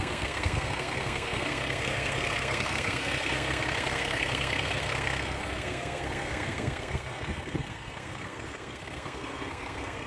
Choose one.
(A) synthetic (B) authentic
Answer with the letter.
A